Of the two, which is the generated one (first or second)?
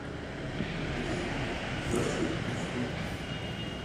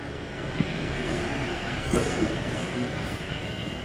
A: second